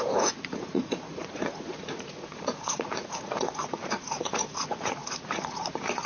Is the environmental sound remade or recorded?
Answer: remade